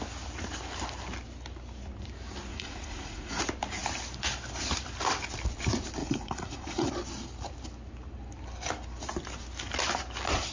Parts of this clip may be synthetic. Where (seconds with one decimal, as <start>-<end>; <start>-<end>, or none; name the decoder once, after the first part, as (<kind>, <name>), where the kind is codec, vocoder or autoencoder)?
2.5-3.4 (vocoder, Vocos); 6.0-6.9